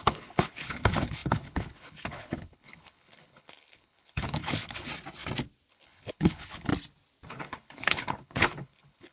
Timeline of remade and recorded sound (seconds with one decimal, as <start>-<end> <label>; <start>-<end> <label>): 0.0-4.9 remade; 4.9-5.7 recorded; 5.7-6.7 remade; 6.7-7.3 recorded; 7.3-9.1 remade